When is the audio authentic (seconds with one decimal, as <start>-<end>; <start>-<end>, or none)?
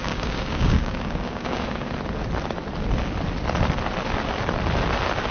1.9-5.3